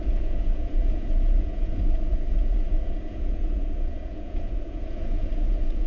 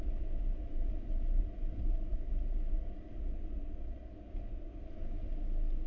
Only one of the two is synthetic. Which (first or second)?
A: first